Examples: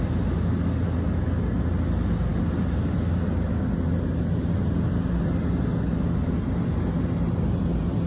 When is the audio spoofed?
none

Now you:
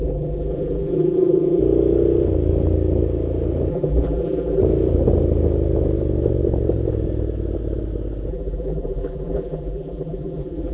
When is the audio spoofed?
0.0-1.6 (vocoder, BigVGAN v2); 3.7-4.6; 8.3-10.7

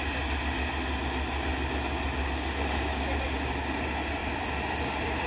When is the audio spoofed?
4.2-5.3 (vocoder, BigVGAN v2)

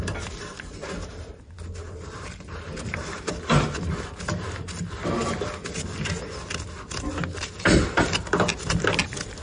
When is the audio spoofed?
0.4-1.4 (vocoder, BigVGAN v2); 1.8-3.3

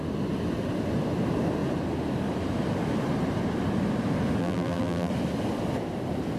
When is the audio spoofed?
4.4-5.1 (vocoder, BigVGAN v2)

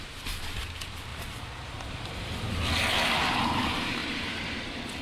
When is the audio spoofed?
1.1-2.3 (vocoder, BigVGAN v2); 4.0-4.5